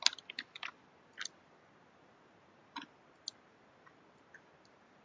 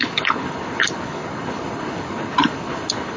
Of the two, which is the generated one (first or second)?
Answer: second